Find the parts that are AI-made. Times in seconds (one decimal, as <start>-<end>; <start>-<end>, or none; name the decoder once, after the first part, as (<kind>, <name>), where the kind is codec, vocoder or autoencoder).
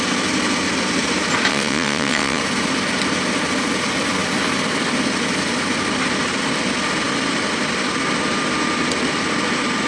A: 1.5-2.4 (vocoder, WaveNeXt)